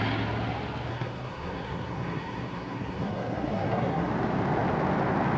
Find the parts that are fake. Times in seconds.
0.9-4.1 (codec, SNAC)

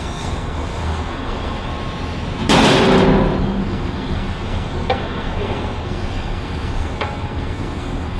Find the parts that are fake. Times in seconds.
0.0-1.7 (codec, SNAC); 3.4-8.2

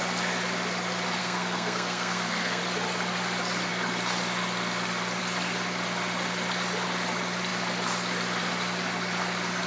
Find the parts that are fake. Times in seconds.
1.2-2.6 (codec, SNAC)

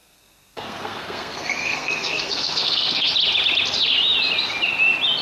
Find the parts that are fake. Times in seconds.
0.0-3.1 (codec, SNAC)